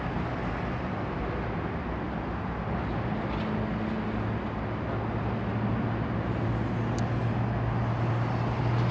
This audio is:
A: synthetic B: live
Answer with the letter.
B